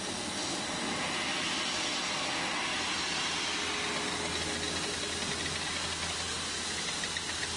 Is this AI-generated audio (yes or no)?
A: no